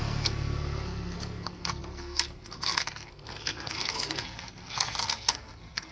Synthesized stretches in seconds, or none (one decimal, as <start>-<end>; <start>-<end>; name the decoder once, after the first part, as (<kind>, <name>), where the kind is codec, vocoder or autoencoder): 0.0-5.9 (codec, SNAC)

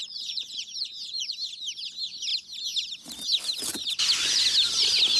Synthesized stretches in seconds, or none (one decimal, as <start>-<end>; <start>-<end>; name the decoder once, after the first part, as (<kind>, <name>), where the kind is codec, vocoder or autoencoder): 0.0-1.3 (vocoder, Vocos)

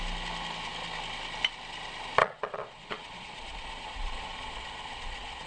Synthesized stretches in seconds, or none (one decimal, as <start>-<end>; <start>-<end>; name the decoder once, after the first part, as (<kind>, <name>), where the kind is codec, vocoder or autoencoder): 2.2-5.5 (vocoder, Vocos)

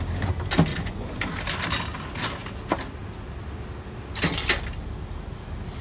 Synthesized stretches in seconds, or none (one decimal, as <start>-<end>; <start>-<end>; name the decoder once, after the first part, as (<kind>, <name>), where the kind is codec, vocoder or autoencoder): 0.7-1.2 (vocoder, Vocos)

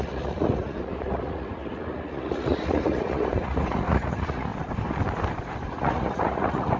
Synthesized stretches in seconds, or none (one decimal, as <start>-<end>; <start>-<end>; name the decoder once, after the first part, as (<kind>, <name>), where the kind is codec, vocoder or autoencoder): 0.0-4.5 (vocoder, Vocos); 5.7-6.8

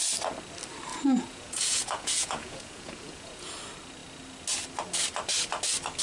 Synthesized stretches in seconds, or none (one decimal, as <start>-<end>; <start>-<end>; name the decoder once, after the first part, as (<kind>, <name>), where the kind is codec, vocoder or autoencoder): 0.9-3.5 (vocoder, Vocos)

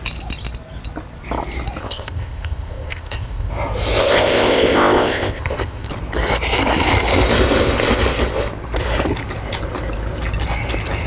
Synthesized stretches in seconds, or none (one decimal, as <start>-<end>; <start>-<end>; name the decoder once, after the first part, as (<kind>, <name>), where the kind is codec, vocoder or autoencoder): 1.8-3.5 (codec, ZipCodec); 4.0-5.9

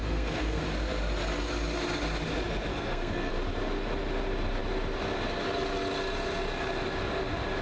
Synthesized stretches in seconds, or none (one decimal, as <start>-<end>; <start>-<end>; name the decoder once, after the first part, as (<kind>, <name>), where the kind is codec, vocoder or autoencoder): 0.0-0.6 (codec, SNAC); 2.7-3.3